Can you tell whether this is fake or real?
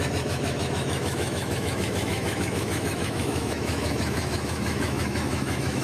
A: fake